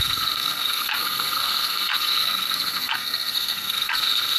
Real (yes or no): no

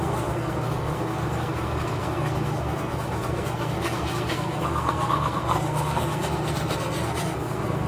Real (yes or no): no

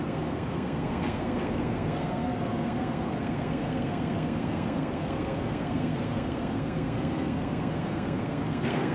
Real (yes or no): no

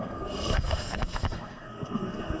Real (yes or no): no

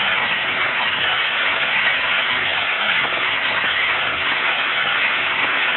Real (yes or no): no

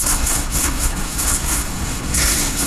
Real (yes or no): no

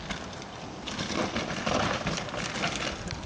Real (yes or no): yes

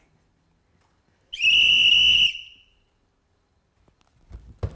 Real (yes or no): yes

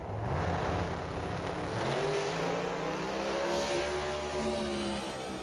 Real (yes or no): yes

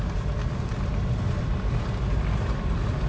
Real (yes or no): yes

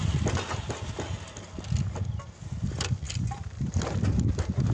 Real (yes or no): yes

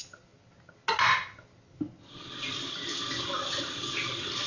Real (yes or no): yes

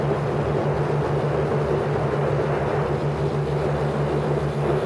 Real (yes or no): yes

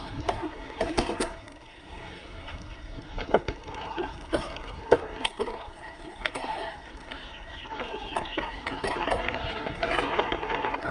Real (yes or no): no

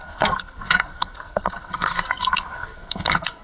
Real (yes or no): no